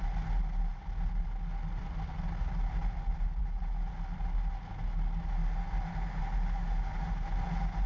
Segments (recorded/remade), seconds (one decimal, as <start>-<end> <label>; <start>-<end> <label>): 0.0-7.9 recorded